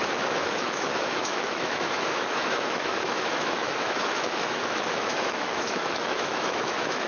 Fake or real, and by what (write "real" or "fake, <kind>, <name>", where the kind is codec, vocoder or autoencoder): fake, autoencoder, DAC-VAE